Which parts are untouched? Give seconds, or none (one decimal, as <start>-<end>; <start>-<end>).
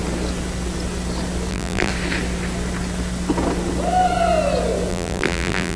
0.0-1.5; 1.9-4.9